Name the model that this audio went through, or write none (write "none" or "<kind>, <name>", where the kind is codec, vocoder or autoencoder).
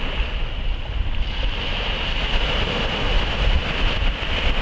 none